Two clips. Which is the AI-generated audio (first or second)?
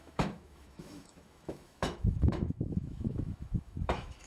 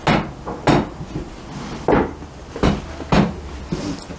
first